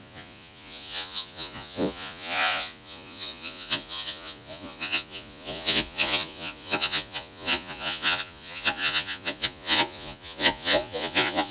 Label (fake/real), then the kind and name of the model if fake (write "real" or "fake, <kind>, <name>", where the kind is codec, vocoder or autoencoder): fake, vocoder, Vocos